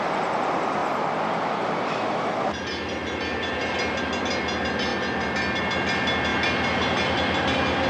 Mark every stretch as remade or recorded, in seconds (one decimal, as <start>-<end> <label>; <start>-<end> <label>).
0.0-7.9 recorded